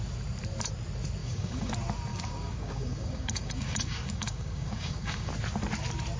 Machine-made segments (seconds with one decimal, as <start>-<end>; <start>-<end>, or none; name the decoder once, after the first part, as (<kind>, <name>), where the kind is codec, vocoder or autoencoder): 1.2-1.7 (codec, DAC); 2.1-5.3